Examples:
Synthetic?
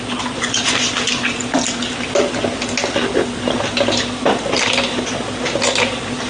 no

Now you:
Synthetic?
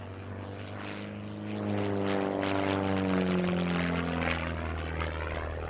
no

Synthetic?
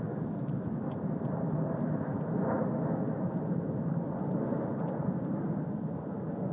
no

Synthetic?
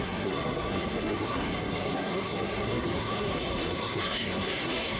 yes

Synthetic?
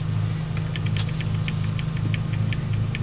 no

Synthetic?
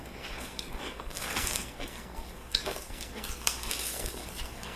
yes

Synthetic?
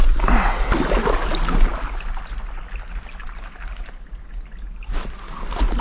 no